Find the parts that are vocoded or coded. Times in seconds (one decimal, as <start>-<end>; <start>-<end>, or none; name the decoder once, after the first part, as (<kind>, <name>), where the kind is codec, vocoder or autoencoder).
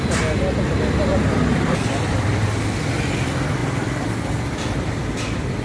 1.1-2.6 (vocoder, BigVGAN v2); 3.6-4.9